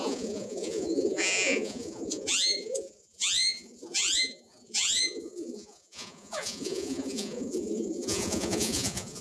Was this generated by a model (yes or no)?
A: yes